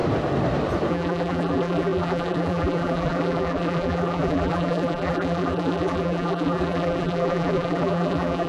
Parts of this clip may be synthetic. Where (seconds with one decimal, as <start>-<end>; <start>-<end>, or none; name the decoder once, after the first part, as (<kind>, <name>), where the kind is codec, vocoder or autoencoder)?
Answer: 0.9-8.5 (vocoder, BigVGAN v2)